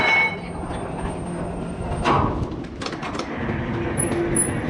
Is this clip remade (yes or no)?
no